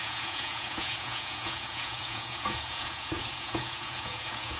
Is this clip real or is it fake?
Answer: fake